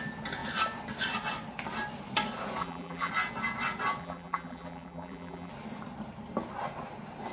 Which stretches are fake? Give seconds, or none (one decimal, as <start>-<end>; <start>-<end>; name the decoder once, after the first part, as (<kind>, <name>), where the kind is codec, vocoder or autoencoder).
2.6-3.1 (vocoder, BigVGAN v2); 4.0-5.5